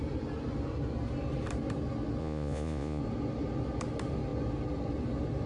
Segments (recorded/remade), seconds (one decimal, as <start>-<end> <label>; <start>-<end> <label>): 0.0-2.2 recorded; 2.2-3.0 remade; 3.0-5.5 recorded

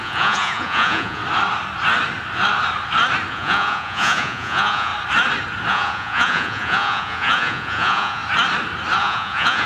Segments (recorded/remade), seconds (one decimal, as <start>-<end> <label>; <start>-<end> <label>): 0.0-1.2 remade; 1.2-3.3 recorded; 3.3-4.9 remade; 4.9-5.7 recorded; 5.7-8.2 remade; 8.2-9.0 recorded; 9.0-9.7 remade

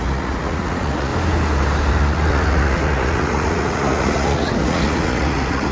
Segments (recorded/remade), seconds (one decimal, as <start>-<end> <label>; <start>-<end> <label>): 0.0-1.1 remade; 1.1-1.9 recorded; 1.9-5.7 remade

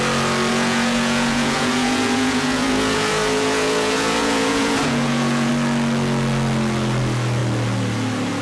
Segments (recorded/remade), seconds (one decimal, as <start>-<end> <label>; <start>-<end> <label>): 0.0-0.5 recorded; 0.5-5.5 remade; 5.5-8.4 recorded

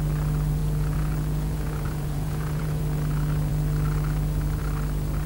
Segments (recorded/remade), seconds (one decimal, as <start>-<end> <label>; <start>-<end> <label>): 0.0-0.6 recorded; 0.6-2.8 remade; 2.8-5.3 recorded

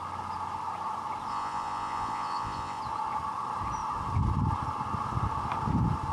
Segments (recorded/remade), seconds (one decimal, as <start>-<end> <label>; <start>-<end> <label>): 0.0-1.3 recorded; 1.3-2.8 remade; 2.8-6.1 recorded

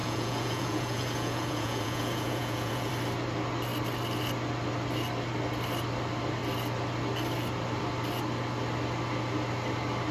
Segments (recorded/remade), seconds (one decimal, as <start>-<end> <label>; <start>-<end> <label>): 0.0-2.9 remade; 2.9-10.1 recorded